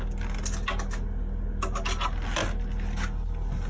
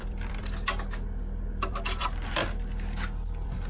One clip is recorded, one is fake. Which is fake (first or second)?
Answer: second